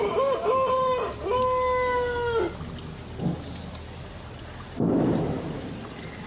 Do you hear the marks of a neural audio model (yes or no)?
no